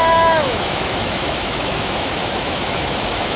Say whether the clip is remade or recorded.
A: remade